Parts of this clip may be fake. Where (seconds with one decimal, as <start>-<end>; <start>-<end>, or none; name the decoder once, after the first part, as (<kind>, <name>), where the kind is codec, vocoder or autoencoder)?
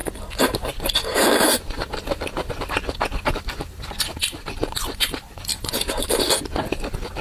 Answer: 0.0-7.2 (vocoder, BigVGAN v2)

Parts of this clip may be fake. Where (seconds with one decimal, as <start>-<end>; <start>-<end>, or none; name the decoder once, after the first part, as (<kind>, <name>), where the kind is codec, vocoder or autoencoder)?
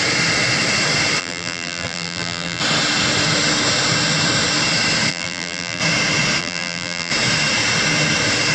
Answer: 1.2-2.6 (vocoder, BigVGAN v2); 5.1-5.8; 6.4-7.1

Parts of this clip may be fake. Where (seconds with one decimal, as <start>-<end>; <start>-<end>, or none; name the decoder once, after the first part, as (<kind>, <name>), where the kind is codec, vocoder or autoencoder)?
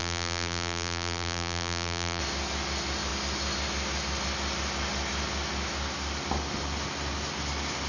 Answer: 0.0-2.2 (vocoder, BigVGAN v2)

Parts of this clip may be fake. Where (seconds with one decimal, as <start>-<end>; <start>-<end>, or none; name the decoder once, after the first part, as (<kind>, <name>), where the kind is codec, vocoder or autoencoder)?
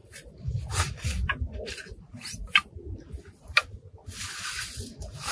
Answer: 0.0-3.2 (vocoder, BigVGAN v2)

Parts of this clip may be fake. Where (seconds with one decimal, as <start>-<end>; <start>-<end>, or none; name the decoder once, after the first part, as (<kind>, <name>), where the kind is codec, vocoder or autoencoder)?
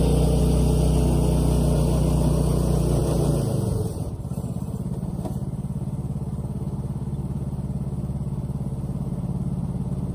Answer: 3.0-5.1 (vocoder, BigVGAN v2)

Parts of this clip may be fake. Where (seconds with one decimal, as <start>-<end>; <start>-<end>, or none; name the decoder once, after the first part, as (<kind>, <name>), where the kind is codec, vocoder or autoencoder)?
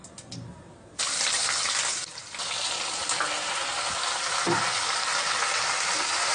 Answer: 0.0-1.0 (vocoder, BigVGAN v2); 2.1-6.3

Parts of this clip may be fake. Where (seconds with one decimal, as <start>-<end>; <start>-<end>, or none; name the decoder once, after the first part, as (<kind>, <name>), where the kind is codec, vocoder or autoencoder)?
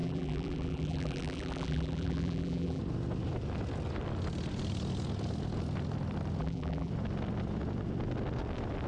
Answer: 0.0-2.8 (vocoder, BigVGAN v2); 6.4-6.9